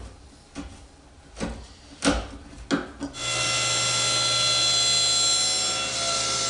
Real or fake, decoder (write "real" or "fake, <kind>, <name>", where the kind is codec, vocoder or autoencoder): real